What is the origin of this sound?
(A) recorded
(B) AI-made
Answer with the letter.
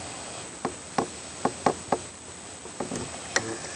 A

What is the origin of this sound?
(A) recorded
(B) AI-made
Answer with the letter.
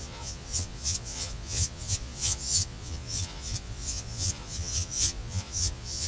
B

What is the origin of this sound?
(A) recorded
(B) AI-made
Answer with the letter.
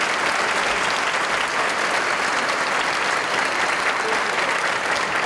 A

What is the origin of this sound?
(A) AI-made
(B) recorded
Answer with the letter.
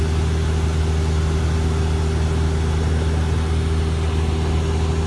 B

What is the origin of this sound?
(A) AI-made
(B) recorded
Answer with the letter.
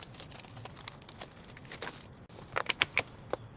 B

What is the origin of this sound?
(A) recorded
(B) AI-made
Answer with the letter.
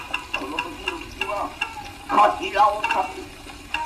A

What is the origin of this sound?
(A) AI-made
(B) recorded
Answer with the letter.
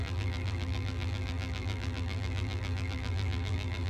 A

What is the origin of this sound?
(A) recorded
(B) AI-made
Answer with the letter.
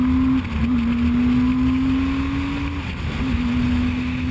A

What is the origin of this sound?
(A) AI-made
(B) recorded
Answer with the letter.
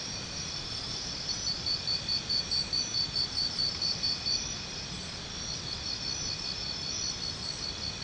B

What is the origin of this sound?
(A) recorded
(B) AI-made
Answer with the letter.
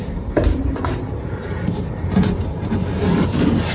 B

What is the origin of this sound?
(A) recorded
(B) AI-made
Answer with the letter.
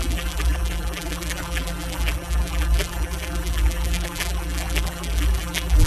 B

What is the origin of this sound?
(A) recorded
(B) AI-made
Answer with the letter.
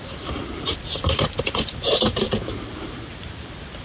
B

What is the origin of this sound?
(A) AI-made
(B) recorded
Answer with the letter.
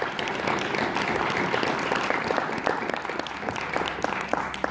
B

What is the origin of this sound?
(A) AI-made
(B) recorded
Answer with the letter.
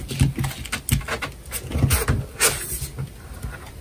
B